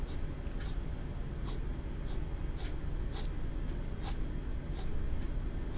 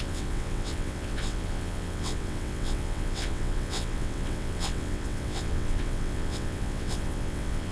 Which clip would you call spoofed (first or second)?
second